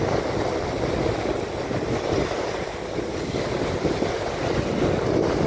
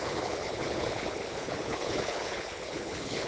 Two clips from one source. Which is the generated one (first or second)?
second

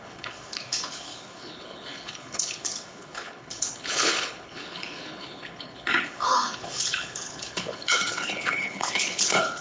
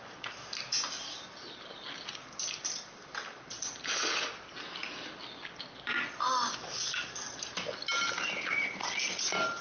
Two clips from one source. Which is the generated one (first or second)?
first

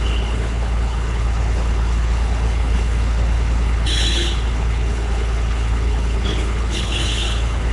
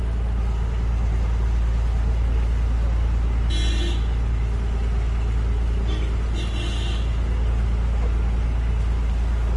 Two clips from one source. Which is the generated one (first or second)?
first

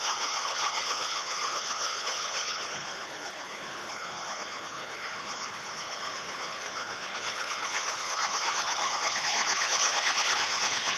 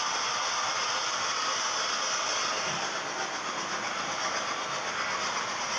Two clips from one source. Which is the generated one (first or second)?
first